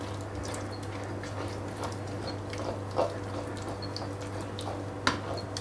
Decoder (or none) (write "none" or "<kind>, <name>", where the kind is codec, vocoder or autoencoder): none